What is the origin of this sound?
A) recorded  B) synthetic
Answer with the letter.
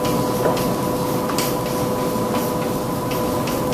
A